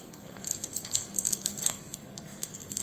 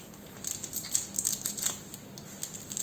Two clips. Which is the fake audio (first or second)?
first